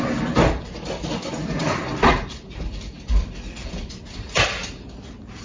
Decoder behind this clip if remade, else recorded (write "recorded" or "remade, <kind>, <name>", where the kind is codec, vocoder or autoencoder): remade, vocoder, BigVGAN v2